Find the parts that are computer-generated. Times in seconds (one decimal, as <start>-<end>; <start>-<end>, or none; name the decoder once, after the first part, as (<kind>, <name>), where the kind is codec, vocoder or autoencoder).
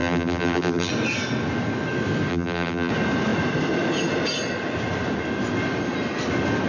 0.0-0.9 (vocoder, BigVGAN v2); 2.3-2.9